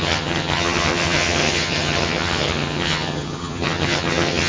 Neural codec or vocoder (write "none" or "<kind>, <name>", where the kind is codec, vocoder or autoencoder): vocoder, HiFi-GAN